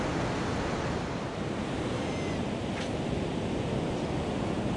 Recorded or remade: recorded